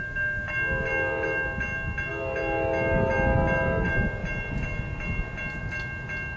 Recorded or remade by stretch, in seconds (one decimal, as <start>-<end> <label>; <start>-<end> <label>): 0.0-6.4 recorded